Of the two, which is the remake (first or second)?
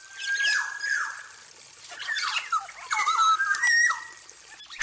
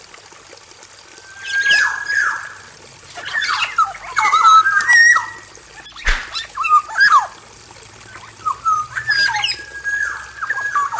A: first